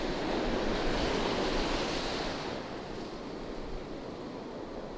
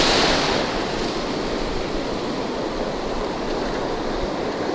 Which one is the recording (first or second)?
first